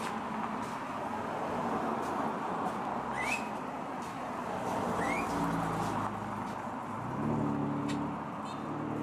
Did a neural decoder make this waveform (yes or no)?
no